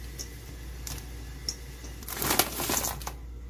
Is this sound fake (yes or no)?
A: no